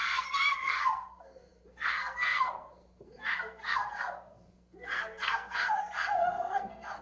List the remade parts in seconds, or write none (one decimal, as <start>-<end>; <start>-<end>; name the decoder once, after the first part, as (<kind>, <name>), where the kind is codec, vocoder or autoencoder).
0.0-7.0 (codec, SNAC)